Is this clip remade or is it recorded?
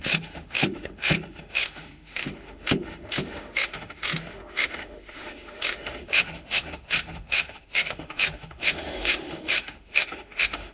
remade